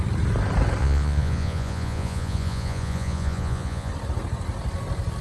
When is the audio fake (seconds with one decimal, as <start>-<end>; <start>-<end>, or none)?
0.8-3.9